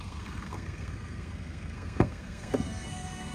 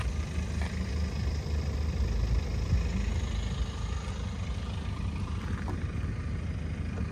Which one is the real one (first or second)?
second